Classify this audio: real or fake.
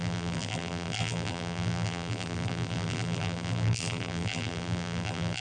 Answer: fake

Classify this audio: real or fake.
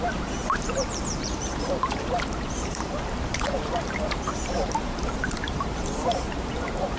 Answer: fake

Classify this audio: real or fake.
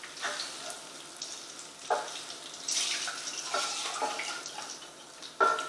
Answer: real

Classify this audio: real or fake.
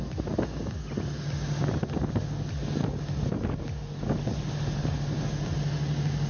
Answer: real